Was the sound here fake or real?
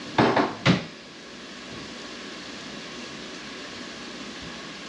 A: real